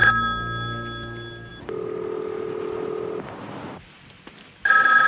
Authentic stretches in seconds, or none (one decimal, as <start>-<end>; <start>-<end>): 0.0-5.1